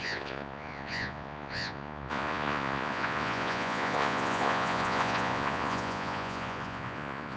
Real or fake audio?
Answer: fake